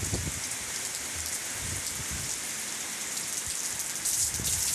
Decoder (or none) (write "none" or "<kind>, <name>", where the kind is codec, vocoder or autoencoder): none